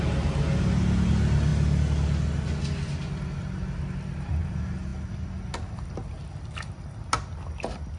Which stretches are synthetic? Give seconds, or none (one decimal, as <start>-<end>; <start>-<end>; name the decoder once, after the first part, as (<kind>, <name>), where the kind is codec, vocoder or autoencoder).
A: none